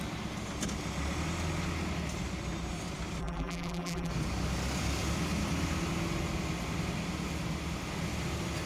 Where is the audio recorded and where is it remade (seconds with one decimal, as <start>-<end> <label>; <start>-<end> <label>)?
0.0-3.2 recorded; 3.2-4.1 remade; 4.1-8.7 recorded